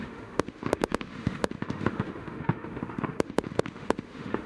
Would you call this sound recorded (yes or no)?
no